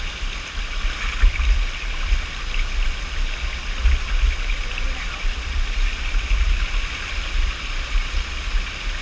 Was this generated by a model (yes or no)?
no